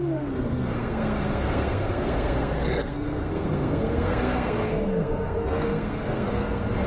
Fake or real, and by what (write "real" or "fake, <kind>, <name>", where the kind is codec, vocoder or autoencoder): fake, codec, SNAC